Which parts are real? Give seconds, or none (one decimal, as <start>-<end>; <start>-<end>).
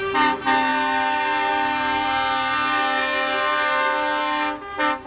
0.0-5.1